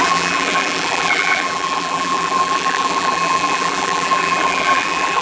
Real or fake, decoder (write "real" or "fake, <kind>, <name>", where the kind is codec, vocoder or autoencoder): fake, vocoder, BigVGAN v2